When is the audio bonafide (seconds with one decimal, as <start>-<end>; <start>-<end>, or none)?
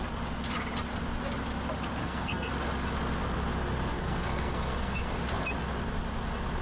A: 0.0-2.0; 2.5-3.9; 5.2-6.6